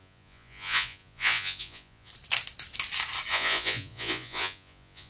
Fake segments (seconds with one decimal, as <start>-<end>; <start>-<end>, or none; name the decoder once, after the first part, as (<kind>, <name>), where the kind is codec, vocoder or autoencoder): 0.0-2.1 (vocoder, Vocos); 3.3-5.1